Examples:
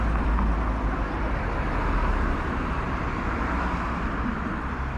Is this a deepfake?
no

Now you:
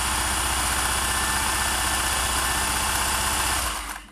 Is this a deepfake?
no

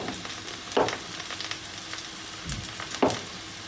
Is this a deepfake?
no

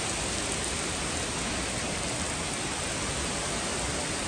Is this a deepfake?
no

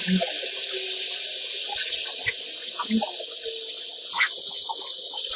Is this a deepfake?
no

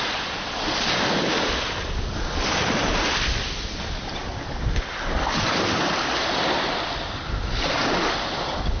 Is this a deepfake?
no